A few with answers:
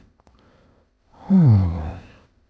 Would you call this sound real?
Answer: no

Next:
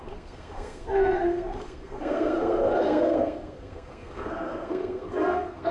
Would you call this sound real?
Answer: no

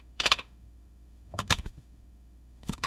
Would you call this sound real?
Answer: no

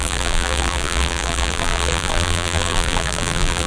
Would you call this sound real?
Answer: no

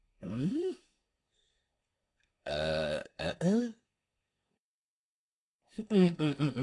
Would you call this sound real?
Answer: no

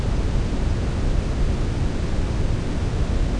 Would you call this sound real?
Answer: yes